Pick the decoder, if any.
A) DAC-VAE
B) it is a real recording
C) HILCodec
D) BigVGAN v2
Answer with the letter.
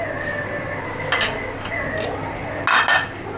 B